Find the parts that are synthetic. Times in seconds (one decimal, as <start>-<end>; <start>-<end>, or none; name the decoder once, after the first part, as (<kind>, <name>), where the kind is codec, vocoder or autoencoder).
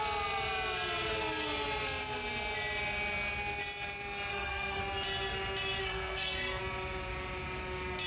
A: 4.3-4.8 (codec, SNAC); 5.8-6.6